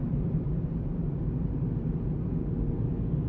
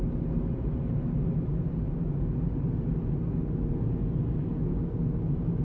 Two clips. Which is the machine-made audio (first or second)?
first